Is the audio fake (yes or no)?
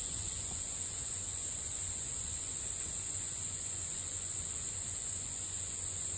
yes